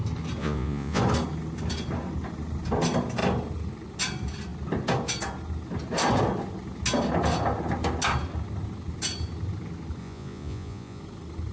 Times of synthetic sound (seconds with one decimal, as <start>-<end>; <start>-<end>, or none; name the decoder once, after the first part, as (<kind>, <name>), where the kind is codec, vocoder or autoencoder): 0.4-1.0 (vocoder, Vocos); 10.0-11.0